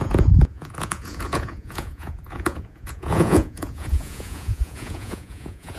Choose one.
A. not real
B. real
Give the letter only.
A